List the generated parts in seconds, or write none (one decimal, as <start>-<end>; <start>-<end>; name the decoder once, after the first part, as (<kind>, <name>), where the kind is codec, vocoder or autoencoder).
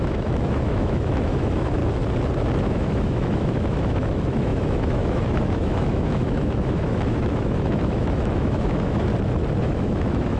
0.0-1.8 (autoencoder, DAC-VAE); 2.6-9.1; 9.6-10.4